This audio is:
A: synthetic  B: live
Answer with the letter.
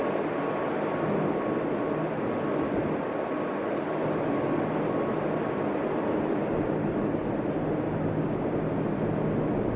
B